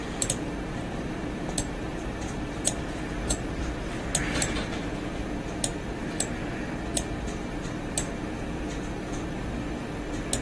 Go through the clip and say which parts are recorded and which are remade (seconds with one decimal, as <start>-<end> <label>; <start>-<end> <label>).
0.0-4.0 remade; 4.0-10.4 recorded